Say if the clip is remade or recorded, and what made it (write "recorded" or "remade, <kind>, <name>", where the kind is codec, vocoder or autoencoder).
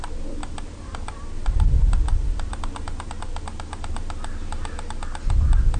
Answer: recorded